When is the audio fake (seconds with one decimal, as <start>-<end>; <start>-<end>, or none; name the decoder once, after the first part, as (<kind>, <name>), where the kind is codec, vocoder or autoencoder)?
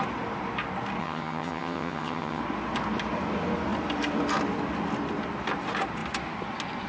1.0-2.4 (vocoder, HiFi-GAN)